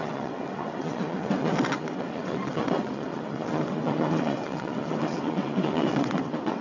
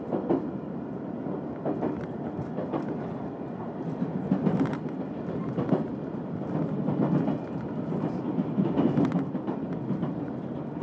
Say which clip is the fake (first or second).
first